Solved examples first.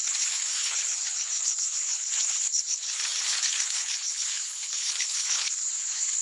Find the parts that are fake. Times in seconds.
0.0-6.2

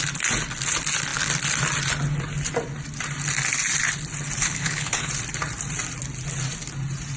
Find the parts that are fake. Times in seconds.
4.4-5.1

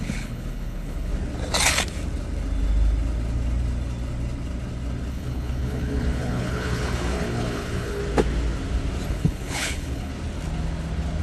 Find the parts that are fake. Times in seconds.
0.0-1.1; 5.1-8.0; 9.1-10.1

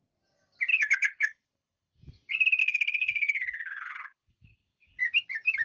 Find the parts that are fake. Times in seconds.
0.7-1.9; 2.6-5.0

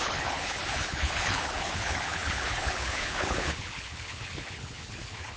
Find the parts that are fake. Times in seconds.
0.0-5.4

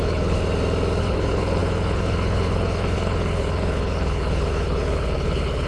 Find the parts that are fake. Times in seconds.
0.0-0.4; 1.0-5.7

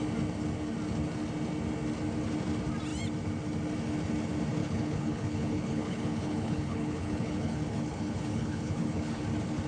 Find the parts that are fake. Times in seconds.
4.6-9.2